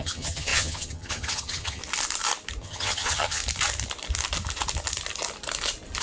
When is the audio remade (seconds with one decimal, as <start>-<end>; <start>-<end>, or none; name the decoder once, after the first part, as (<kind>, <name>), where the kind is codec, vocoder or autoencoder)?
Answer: 0.0-1.8 (vocoder, HiFi-GAN); 2.6-3.4